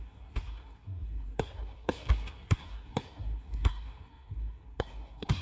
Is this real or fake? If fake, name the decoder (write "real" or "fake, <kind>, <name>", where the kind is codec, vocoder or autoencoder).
fake, codec, SNAC